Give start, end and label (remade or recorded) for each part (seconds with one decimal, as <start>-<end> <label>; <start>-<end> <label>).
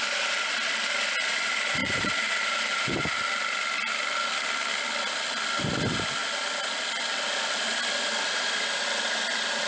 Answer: 0.0-1.8 recorded; 1.8-3.0 remade; 3.0-9.7 recorded